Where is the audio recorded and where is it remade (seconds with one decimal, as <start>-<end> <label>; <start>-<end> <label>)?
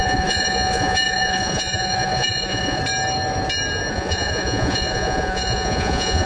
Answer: 0.0-2.8 remade; 2.8-3.9 recorded; 3.9-6.3 remade